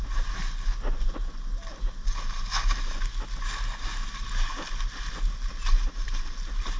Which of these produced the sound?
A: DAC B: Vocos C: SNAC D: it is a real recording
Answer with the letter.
D